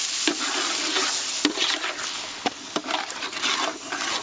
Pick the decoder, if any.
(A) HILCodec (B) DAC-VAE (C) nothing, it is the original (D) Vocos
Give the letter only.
C